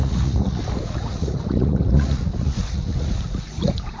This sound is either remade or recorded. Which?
remade